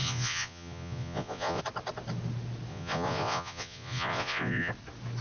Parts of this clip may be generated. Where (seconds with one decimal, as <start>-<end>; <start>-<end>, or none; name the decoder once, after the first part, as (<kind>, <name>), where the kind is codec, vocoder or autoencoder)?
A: 0.0-1.6 (vocoder, Vocos); 2.7-4.7